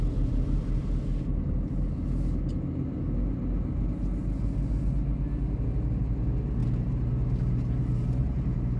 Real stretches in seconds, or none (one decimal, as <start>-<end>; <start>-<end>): 0.0-8.8